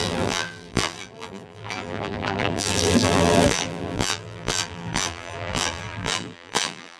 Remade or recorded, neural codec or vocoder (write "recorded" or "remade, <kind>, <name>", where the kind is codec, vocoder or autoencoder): remade, vocoder, BigVGAN v2